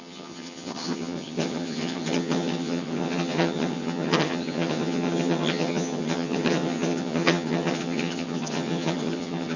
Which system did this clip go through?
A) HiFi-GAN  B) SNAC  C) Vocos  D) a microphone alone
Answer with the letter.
A